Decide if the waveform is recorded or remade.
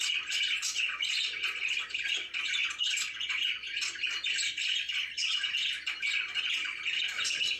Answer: recorded